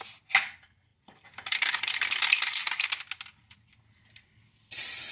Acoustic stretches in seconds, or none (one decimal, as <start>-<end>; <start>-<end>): 0.0-0.9; 2.4-5.1